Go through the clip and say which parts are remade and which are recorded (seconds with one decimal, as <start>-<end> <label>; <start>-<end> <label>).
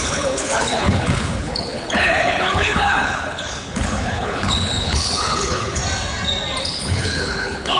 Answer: 0.0-5.8 remade; 5.8-6.6 recorded; 6.6-7.8 remade